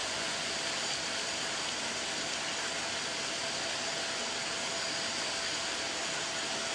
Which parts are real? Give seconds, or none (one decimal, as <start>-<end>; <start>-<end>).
0.5-6.7